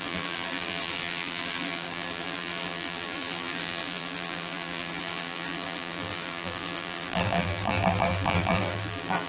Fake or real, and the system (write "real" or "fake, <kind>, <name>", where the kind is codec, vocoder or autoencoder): fake, vocoder, BigVGAN v2